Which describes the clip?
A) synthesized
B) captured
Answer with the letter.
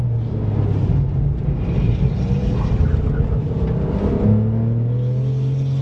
B